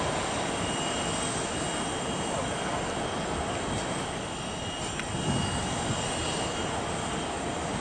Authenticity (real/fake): real